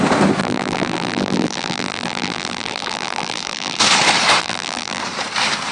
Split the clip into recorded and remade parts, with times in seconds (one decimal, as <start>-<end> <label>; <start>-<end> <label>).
0.0-0.4 recorded; 0.4-3.8 remade; 3.8-4.4 recorded; 4.4-5.0 remade; 5.0-5.7 recorded